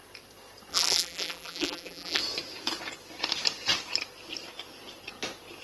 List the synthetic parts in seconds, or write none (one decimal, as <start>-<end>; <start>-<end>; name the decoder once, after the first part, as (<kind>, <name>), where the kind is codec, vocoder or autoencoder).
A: 0.7-2.2 (vocoder, BigVGAN v2)